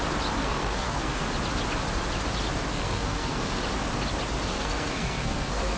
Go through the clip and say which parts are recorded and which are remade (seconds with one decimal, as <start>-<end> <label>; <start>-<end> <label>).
0.0-0.4 recorded; 0.4-1.2 remade; 1.2-2.7 recorded; 2.7-3.6 remade; 3.6-4.5 recorded; 4.5-5.8 remade